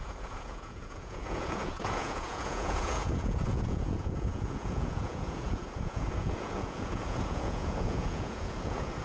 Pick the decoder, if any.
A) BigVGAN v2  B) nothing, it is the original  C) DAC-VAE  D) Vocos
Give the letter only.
D